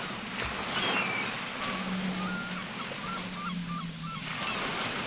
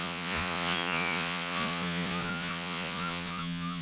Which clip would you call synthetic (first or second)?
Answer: second